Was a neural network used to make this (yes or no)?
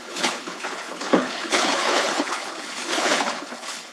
yes